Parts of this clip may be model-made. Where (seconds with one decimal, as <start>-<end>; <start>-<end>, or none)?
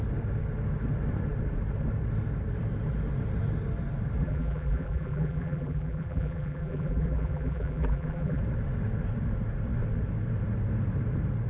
4.2-8.4